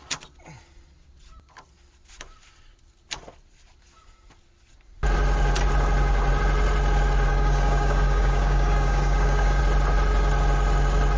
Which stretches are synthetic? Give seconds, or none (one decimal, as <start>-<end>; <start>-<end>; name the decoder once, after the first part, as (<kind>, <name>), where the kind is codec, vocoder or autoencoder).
7.3-9.6 (codec, DAC)